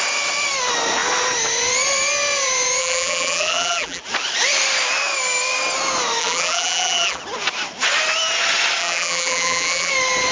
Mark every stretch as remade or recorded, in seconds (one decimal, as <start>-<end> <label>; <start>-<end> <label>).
0.0-2.8 recorded; 2.8-4.0 remade; 4.0-6.2 recorded; 6.2-7.2 remade; 7.2-8.8 recorded; 8.8-9.9 remade; 9.9-10.3 recorded